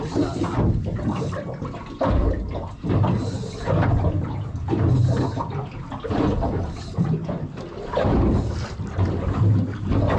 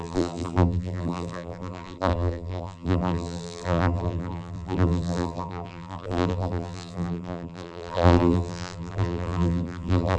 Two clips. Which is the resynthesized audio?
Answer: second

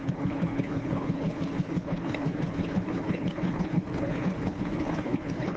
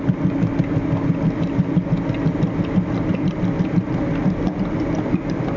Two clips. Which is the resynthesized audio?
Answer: first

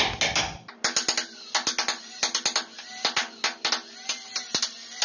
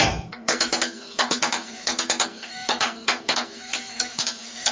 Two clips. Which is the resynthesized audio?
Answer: second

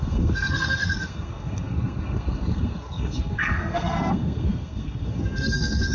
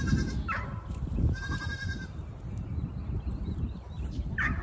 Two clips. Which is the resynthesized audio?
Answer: first